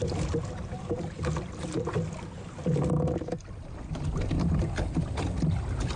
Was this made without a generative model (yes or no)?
yes